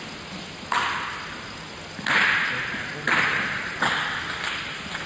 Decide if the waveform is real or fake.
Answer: real